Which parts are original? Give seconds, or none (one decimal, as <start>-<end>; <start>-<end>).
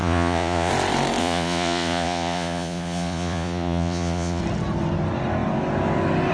0.7-1.2; 4.4-6.3